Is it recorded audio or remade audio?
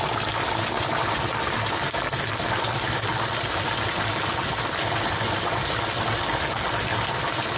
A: recorded